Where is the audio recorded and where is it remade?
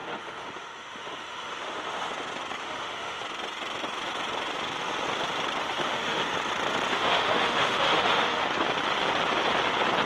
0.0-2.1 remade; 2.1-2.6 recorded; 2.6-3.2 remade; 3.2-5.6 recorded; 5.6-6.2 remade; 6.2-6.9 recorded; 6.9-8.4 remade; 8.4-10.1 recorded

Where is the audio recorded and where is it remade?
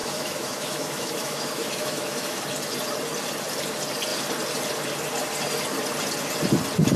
0.0-2.4 remade; 2.4-7.0 recorded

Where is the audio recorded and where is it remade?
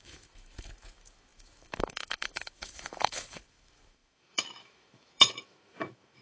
0.0-6.2 remade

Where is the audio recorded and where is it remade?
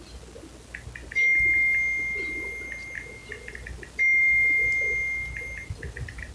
0.0-6.3 recorded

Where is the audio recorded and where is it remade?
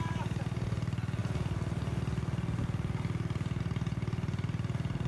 0.0-5.1 recorded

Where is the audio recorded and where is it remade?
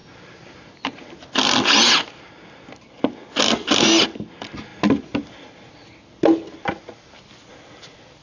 0.0-8.2 recorded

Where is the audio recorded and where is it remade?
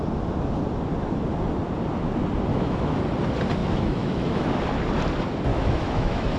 0.0-2.5 recorded; 2.5-3.0 remade; 3.0-3.6 recorded; 3.6-4.5 remade; 4.5-5.5 recorded; 5.5-6.4 remade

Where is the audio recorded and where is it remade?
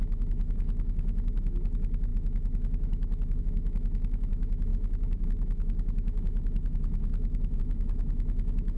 0.0-8.8 remade